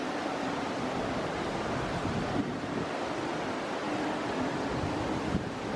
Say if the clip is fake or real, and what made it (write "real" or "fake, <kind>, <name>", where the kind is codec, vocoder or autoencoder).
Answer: real